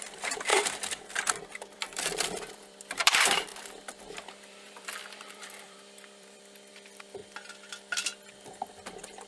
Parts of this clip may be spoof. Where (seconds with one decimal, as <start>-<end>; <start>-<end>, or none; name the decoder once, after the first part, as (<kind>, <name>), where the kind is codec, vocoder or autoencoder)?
0.0-3.5 (vocoder, BigVGAN v2); 4.1-7.2